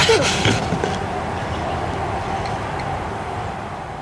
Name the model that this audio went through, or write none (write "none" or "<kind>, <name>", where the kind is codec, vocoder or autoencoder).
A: vocoder, BigVGAN v2